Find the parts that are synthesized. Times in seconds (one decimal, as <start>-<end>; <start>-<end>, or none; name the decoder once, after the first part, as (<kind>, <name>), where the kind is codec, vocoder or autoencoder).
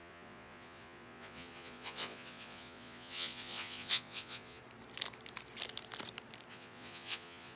0.0-4.6 (vocoder, Vocos); 6.5-7.6